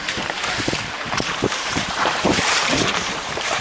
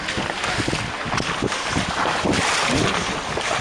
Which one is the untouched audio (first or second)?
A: second